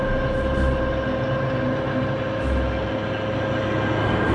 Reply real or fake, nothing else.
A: real